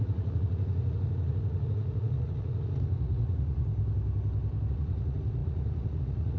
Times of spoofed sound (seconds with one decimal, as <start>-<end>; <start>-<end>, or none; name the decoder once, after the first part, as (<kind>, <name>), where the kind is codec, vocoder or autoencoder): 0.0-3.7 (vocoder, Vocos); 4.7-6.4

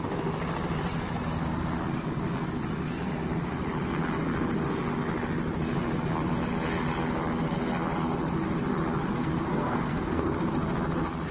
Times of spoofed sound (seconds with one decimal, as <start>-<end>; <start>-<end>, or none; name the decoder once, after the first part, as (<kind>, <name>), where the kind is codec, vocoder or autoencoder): 9.1-10.5 (codec, SNAC)

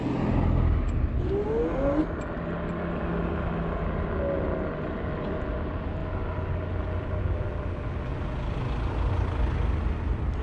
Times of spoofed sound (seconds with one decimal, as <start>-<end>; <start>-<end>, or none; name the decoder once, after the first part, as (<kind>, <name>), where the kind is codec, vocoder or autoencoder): none